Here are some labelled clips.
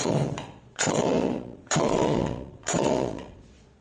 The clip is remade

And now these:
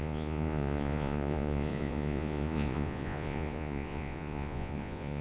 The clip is remade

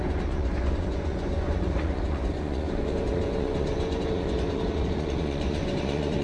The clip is remade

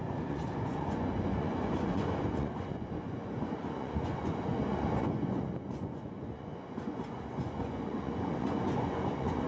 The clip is remade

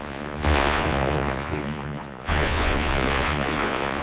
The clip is remade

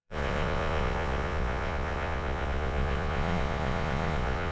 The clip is remade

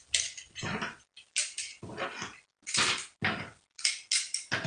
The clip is recorded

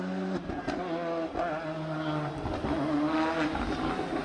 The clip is recorded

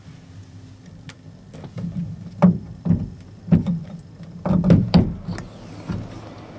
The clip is recorded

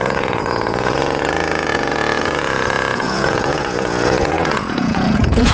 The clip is remade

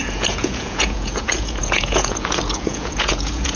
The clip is remade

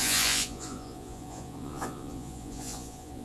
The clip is remade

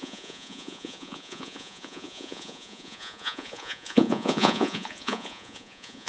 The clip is remade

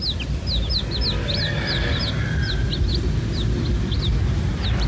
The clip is recorded